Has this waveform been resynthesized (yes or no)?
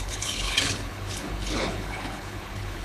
yes